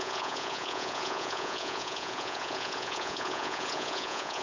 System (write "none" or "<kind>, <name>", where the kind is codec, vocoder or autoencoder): vocoder, Vocos